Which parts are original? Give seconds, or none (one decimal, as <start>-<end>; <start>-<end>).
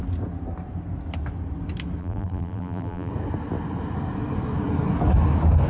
0.0-2.0; 3.1-5.7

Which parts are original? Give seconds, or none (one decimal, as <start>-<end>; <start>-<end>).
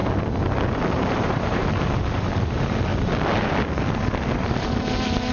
0.0-1.0; 2.9-4.3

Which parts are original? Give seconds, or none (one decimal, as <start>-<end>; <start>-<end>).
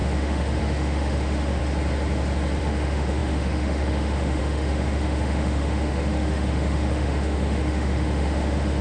1.6-2.6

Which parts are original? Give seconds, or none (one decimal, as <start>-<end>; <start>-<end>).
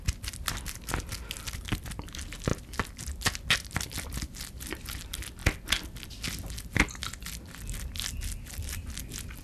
0.0-9.4